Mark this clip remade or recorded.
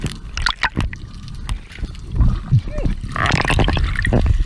recorded